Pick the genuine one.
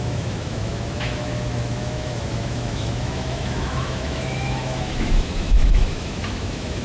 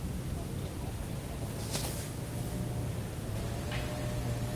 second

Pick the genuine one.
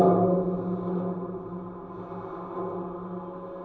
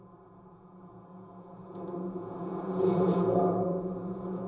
first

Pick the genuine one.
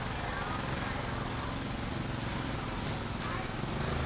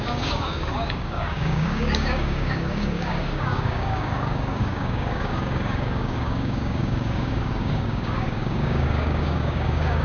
first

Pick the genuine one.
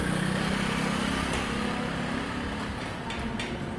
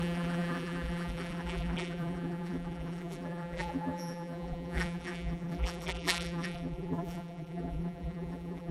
first